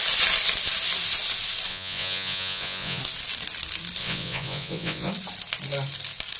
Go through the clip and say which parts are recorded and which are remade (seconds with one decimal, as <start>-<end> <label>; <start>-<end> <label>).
0.0-1.7 recorded; 1.7-3.0 remade; 3.0-4.0 recorded; 4.0-5.1 remade; 5.1-6.4 recorded